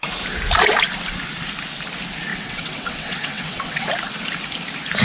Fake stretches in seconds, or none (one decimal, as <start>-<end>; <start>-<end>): 2.3-3.9